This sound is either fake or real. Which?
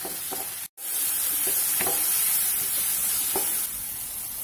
real